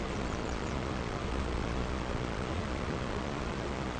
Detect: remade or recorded remade